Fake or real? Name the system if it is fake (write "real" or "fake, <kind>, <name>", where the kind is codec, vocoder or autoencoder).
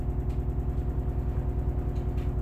real